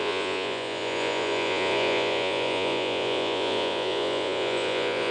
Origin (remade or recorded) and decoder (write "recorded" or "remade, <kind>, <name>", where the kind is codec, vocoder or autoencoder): remade, vocoder, Vocos